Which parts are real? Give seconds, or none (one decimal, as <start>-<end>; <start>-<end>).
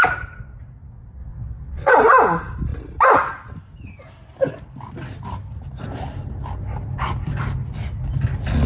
0.0-1.2; 1.9-8.7